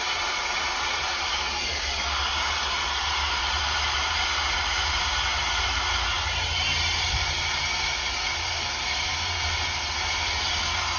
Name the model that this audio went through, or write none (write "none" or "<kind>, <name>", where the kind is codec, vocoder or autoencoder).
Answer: vocoder, BigVGAN v2